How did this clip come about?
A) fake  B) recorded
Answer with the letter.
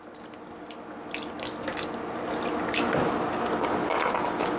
B